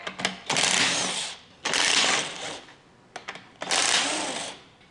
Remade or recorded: recorded